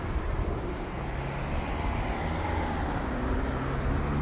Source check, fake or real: real